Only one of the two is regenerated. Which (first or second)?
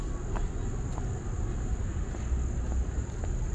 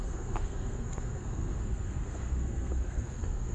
second